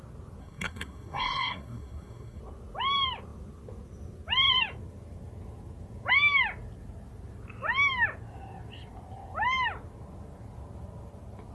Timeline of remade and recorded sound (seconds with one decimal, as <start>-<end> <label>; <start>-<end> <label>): 0.0-0.4 recorded; 0.4-2.4 remade; 2.4-11.5 recorded